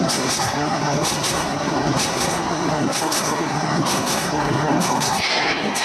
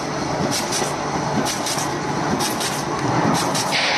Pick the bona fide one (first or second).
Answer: second